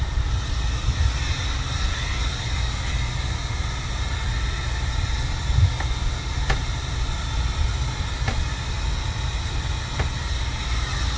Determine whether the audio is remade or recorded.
recorded